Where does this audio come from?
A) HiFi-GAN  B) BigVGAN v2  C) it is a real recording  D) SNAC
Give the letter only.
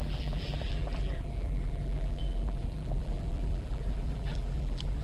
B